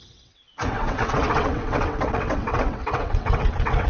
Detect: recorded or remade remade